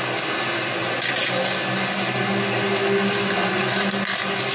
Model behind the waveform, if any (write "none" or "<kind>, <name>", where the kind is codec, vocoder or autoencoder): none